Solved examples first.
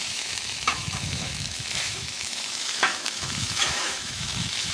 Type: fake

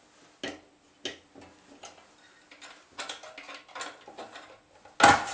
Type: real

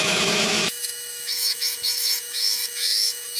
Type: fake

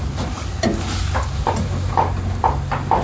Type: real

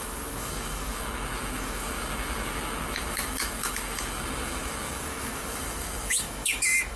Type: fake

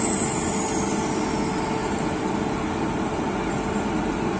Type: real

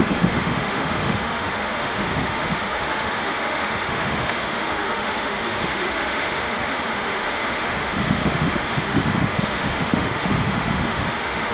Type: fake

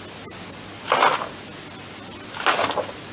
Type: real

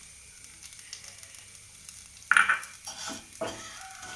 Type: real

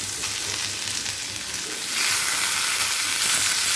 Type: real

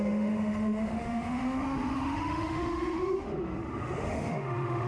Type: fake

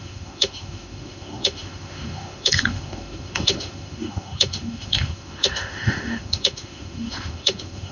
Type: fake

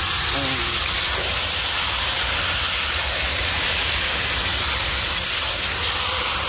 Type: real